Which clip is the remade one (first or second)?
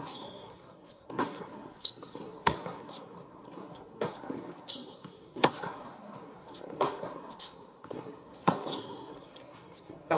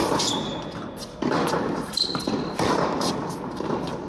first